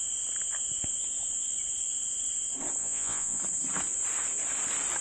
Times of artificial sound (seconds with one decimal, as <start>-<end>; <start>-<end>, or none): 2.8-3.4